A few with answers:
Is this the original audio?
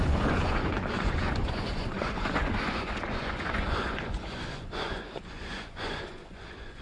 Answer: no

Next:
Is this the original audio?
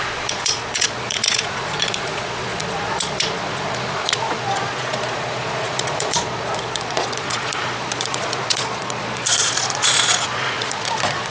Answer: no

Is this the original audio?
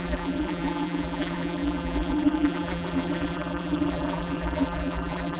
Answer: no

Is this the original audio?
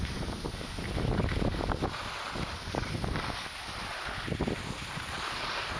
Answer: yes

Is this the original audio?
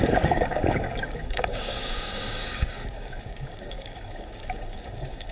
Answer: no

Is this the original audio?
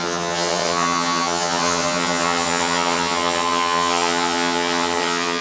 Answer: no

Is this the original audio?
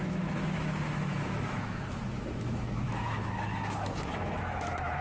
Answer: no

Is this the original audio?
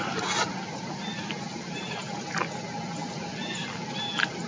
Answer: yes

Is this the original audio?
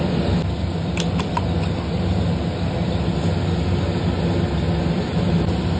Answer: yes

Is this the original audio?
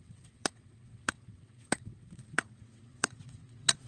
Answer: no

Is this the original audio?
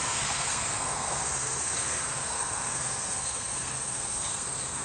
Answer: no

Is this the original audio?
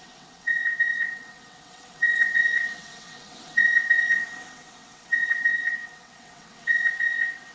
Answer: no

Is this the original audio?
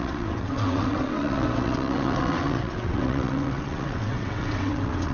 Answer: no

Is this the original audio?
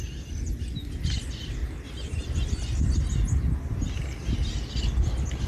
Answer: yes